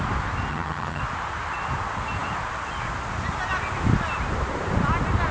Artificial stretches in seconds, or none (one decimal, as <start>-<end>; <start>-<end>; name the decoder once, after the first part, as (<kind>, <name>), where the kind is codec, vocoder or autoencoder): 0.5-1.0 (vocoder, HiFi-GAN)